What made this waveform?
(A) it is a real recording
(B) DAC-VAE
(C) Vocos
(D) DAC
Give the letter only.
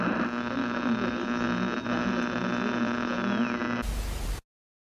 A